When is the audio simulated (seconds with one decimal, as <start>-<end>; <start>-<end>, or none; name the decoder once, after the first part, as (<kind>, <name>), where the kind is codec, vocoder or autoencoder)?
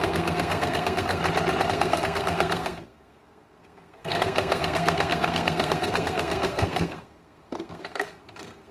0.0-1.2 (codec, SNAC); 1.7-8.7